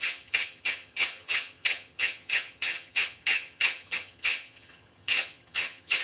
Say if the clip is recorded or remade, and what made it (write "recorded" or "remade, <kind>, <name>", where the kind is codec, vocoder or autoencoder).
remade, vocoder, HiFi-GAN